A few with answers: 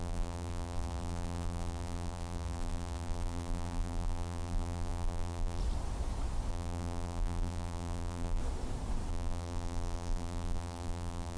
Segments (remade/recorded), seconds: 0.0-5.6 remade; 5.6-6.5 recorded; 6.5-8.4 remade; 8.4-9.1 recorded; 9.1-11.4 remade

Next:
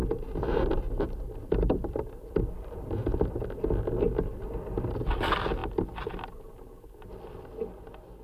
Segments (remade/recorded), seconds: 0.0-4.4 remade; 4.4-8.2 recorded